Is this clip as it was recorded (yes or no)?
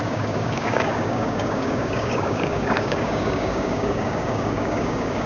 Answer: no